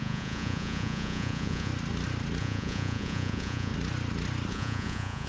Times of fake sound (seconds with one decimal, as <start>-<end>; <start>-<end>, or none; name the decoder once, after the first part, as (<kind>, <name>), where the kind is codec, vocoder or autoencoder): 0.0-1.7 (vocoder, Vocos); 2.4-3.7; 4.5-5.3